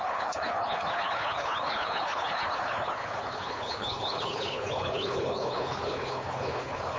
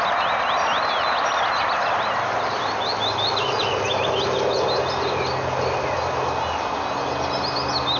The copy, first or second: first